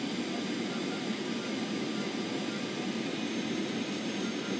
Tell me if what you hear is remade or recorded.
recorded